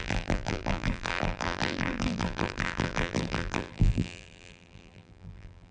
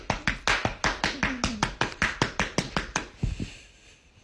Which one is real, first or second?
second